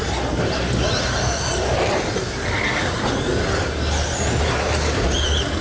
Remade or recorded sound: recorded